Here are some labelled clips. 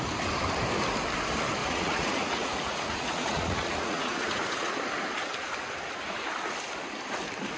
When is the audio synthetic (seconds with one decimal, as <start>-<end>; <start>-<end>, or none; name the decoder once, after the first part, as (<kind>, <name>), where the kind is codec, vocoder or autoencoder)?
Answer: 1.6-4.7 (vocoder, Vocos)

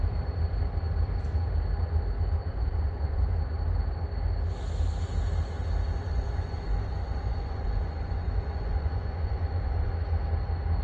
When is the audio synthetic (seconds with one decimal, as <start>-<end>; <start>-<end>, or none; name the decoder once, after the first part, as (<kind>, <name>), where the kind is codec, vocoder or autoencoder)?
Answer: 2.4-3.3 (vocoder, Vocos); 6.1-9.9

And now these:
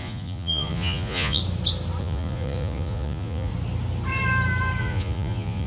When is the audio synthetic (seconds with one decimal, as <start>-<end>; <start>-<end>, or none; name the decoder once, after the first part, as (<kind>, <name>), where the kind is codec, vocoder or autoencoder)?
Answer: 0.0-1.4 (vocoder, Vocos); 2.0-3.5; 4.8-5.7

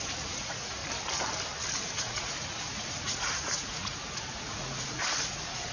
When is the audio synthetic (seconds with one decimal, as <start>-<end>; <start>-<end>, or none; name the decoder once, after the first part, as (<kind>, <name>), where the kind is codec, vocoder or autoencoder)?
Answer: 0.0-0.8 (vocoder, Vocos); 2.0-5.7

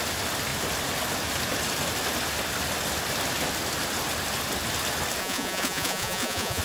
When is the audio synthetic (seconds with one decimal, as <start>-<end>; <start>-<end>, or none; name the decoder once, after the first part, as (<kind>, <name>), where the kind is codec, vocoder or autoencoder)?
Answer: 5.2-6.6 (vocoder, Vocos)

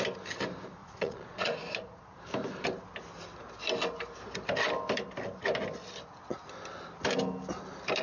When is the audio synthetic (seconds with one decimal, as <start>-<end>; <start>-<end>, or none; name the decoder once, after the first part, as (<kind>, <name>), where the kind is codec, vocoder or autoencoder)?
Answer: 0.8-1.6 (vocoder, Vocos)